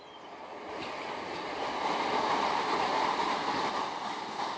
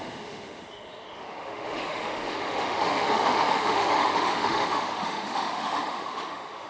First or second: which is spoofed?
second